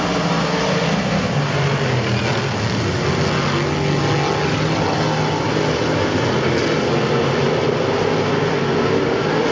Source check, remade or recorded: recorded